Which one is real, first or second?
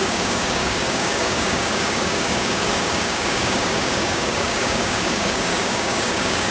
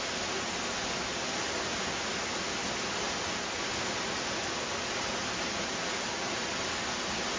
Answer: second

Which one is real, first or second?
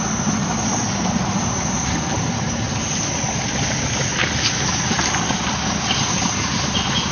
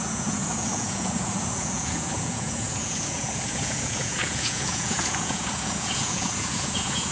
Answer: first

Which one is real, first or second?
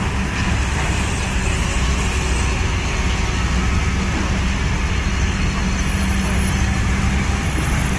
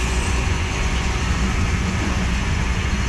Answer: first